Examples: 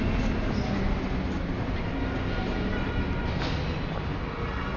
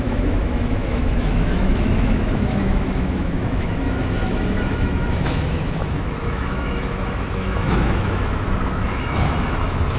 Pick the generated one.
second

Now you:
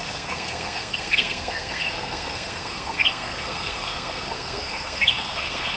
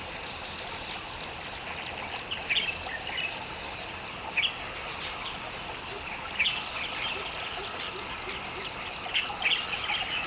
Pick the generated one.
first